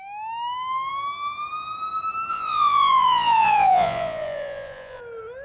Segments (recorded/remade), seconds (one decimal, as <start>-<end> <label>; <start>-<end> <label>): 0.0-2.3 recorded; 2.3-5.0 remade; 5.0-5.4 recorded